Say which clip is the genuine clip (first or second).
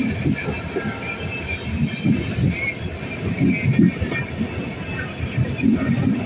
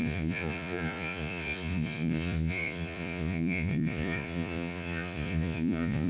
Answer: first